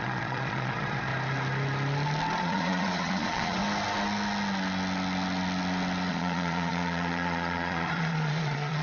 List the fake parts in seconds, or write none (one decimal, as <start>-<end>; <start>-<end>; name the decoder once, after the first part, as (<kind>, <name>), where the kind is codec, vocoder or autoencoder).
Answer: 0.0-1.1 (vocoder, Vocos); 2.4-3.6; 6.1-8.8